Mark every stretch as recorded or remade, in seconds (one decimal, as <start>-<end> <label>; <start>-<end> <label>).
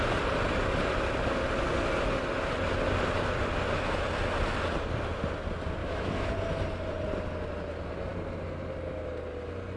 0.0-5.8 recorded; 5.8-6.3 remade; 6.3-9.8 recorded